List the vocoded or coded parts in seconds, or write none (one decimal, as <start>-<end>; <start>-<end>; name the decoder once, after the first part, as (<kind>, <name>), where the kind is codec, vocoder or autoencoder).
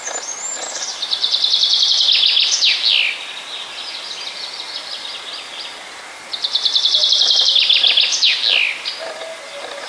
none